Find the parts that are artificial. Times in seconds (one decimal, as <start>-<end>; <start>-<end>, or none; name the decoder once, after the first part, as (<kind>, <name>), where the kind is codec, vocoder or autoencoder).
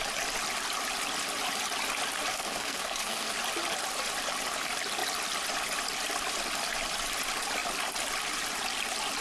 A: 2.3-3.3 (codec, SNAC)